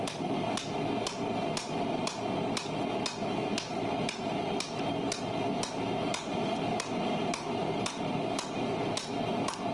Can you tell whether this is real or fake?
real